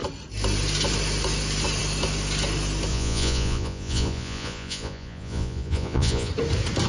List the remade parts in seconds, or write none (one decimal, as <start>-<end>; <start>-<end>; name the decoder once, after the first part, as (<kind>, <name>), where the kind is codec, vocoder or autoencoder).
2.9-6.3 (vocoder, Vocos)